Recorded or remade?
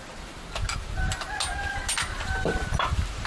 recorded